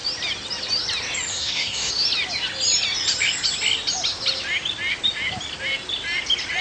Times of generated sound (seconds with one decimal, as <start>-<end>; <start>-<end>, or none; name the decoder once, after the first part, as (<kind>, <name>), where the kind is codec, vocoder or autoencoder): 1.3-1.9 (codec, SNAC)